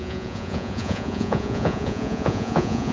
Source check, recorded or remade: remade